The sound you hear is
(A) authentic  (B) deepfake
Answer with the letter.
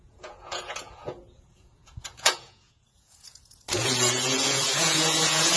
B